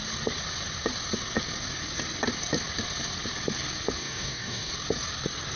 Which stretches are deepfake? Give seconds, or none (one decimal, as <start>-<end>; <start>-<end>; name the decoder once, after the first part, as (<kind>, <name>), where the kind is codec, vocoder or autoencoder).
4.0-4.7 (codec, DAC)